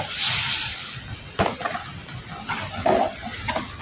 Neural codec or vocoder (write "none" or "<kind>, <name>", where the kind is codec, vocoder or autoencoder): none